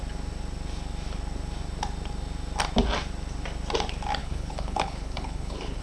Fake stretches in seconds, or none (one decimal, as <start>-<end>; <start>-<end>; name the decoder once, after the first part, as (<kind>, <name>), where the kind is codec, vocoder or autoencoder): 4.2-5.8 (codec, HILCodec)